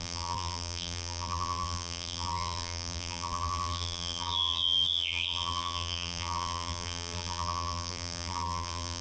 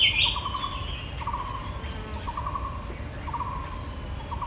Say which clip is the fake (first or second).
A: first